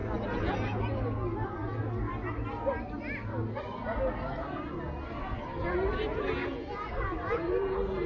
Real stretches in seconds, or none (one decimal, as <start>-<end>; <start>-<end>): 0.8-6.4; 6.9-8.1